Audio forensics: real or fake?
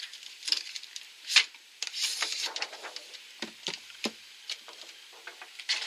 real